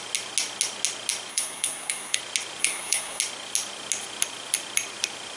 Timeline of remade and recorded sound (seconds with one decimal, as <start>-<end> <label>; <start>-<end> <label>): 0.0-1.3 recorded; 1.3-2.2 remade; 2.2-2.6 recorded; 2.6-3.2 remade; 3.2-5.4 recorded